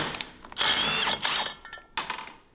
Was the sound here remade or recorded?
recorded